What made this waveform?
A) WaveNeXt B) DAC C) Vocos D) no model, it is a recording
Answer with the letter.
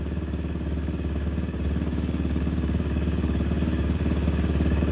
B